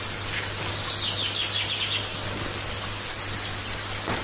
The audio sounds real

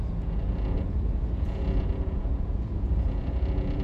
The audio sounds fake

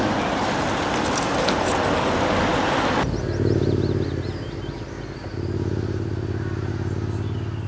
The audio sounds real